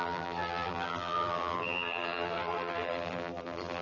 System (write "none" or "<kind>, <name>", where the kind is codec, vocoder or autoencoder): vocoder, BigVGAN v2